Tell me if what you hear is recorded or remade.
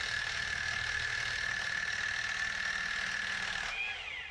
recorded